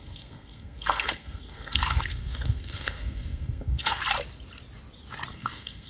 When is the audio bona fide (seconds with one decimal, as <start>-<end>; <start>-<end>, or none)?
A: 4.0-5.3